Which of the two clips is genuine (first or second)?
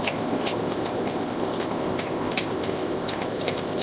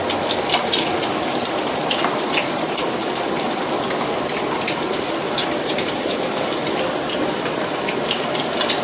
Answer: second